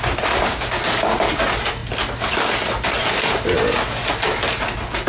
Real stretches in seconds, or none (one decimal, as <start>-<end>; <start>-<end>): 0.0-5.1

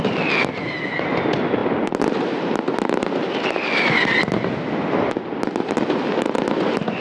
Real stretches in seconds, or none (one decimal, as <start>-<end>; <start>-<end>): 0.0-7.0

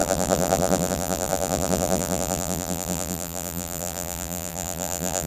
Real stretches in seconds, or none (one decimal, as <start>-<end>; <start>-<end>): none

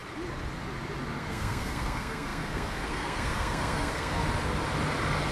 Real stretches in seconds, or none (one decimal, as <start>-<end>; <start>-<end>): 0.0-1.2; 4.2-5.3

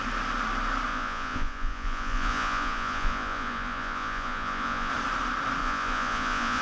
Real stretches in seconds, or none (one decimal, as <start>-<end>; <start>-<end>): 0.0-0.9; 4.9-5.6

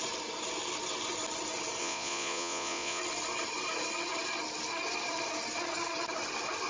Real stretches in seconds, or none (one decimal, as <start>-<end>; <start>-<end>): 0.0-1.8; 3.0-6.7

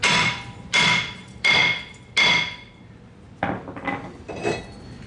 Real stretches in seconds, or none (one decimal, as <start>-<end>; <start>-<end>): 1.6-4.2

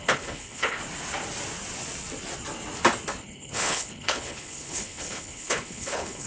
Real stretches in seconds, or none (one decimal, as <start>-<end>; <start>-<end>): 0.8-3.2